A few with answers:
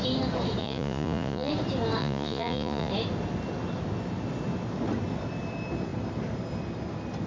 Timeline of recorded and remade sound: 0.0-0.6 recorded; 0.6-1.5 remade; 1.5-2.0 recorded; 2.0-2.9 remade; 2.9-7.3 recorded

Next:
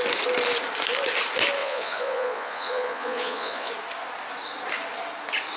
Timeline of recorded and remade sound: 0.0-1.6 recorded; 1.6-3.7 remade; 3.7-5.6 recorded